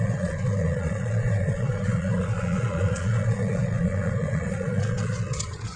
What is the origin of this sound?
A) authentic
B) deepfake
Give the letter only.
B